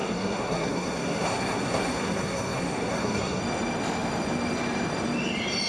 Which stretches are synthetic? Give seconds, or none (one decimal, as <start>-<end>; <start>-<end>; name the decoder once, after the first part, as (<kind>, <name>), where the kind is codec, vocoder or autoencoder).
0.0-3.4 (codec, SNAC)